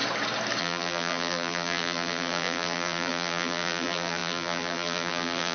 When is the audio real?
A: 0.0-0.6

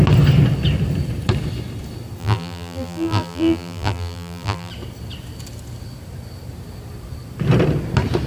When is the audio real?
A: 0.0-2.2; 4.7-8.3

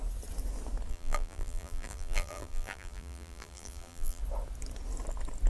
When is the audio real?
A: 0.0-0.9; 4.2-5.5

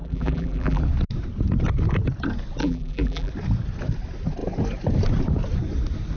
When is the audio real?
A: 0.8-2.6; 3.3-6.2

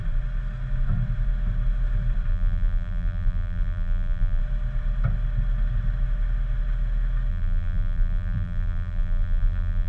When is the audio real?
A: 0.0-2.3; 4.4-7.3

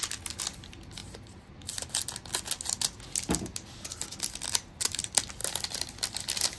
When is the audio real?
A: 0.0-1.0; 1.9-6.6